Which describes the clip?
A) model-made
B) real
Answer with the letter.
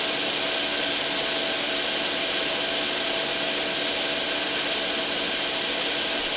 B